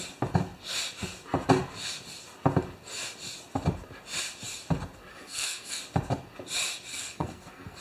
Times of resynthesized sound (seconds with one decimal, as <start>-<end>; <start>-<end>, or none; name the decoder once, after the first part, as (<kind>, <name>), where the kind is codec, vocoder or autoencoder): 5.1-5.8 (codec, SNAC); 6.9-7.8